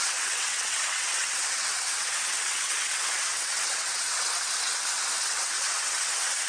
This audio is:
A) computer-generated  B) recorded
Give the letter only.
A